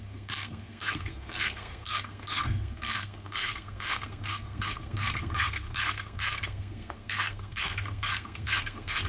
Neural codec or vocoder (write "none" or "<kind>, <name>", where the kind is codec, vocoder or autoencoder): codec, SNAC